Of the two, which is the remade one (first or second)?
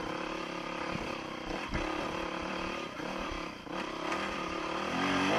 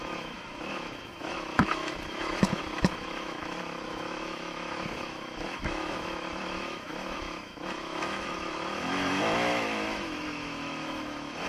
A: second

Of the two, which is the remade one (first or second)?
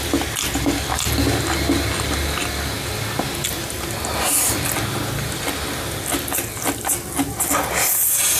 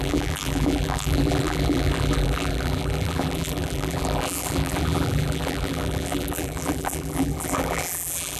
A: second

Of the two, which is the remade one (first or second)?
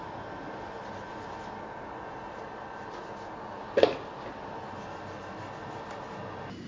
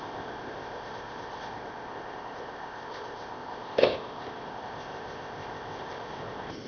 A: second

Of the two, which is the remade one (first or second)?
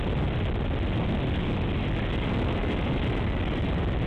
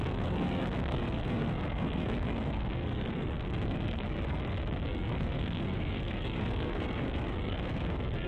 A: second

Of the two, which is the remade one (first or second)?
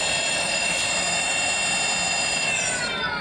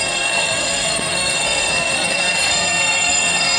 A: second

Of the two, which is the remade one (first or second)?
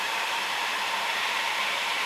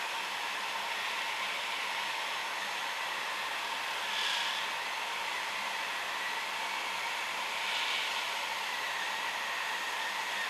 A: first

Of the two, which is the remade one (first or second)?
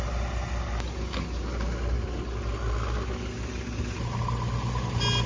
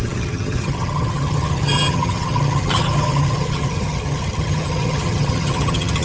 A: second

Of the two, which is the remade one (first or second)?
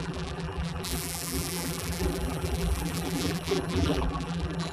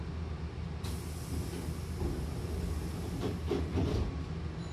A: first